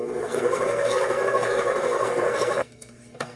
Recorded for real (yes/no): no